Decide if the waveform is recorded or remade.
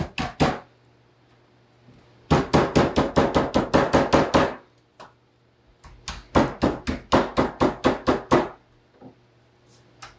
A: recorded